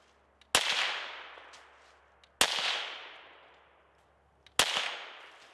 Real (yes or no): yes